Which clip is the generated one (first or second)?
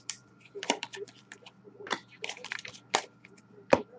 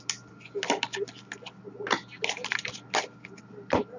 first